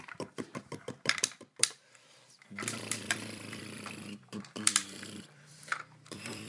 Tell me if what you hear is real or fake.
fake